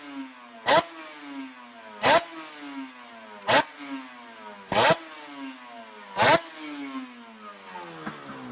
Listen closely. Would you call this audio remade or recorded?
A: recorded